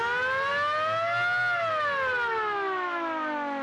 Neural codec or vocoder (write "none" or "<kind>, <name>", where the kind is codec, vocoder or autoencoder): none